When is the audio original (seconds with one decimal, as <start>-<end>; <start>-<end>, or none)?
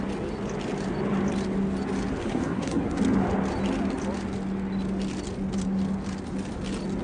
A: 0.0-2.2; 3.0-7.0